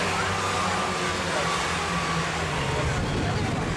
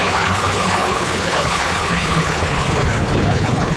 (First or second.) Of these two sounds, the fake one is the second